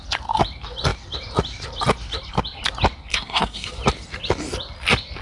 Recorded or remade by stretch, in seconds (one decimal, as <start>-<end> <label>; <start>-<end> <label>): 0.0-3.1 recorded; 3.1-3.7 remade; 3.7-5.2 recorded